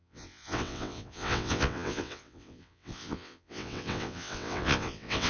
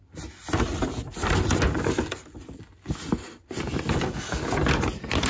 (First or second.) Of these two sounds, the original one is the second